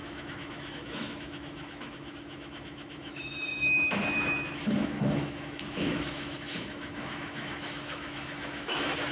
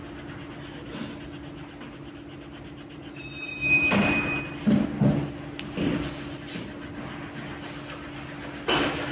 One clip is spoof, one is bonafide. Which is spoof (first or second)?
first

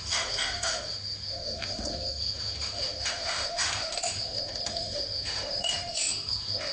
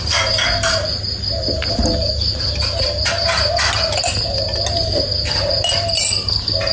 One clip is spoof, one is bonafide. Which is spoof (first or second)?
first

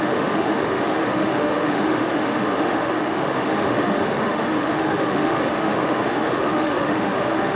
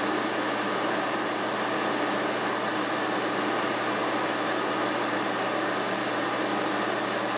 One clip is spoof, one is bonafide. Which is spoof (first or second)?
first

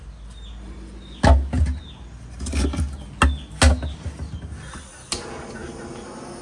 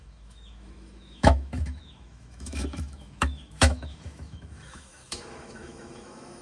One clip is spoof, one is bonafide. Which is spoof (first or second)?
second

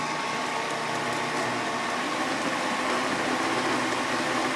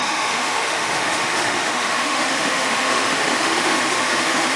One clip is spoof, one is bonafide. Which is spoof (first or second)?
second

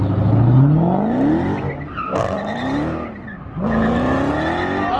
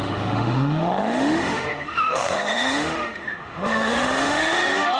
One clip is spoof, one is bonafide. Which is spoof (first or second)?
second